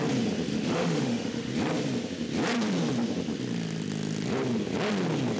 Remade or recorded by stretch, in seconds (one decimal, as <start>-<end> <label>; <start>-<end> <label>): 0.0-0.5 recorded; 0.5-1.5 remade; 1.5-5.4 recorded